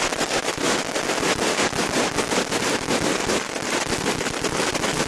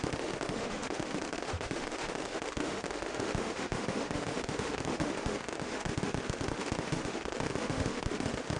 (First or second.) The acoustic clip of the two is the first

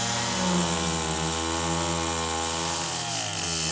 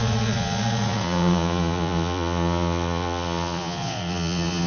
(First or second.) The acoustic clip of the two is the first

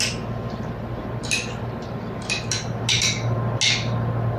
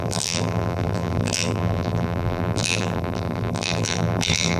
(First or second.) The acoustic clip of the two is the first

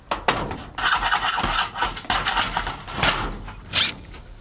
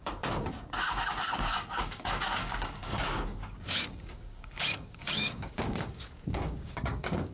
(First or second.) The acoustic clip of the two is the first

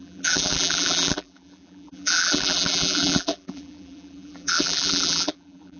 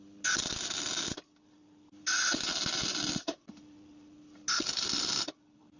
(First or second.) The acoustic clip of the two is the second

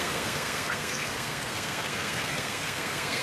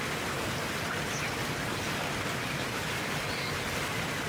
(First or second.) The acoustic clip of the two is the second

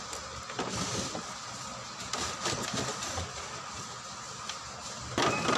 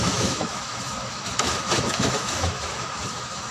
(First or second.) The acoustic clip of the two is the first